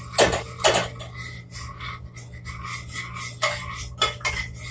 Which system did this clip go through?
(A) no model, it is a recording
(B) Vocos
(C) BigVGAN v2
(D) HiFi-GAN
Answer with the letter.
A